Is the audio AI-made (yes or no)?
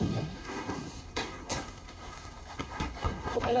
yes